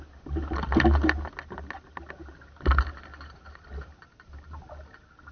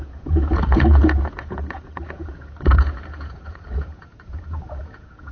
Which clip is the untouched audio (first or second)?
first